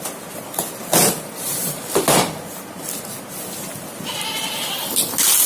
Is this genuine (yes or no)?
yes